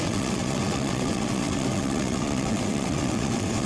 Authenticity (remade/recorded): remade